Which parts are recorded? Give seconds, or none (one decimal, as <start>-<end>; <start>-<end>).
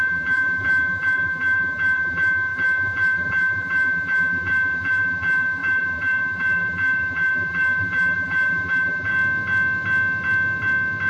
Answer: 9.1-11.1